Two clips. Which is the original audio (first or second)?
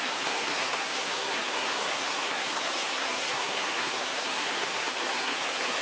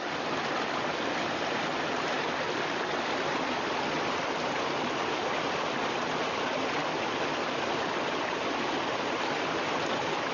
second